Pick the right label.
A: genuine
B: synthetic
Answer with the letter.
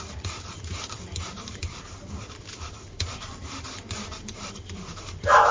B